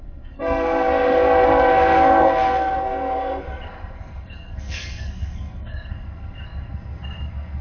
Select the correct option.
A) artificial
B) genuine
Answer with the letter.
A